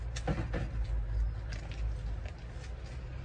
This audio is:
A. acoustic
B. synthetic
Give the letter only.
A